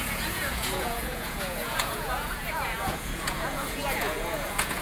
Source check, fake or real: fake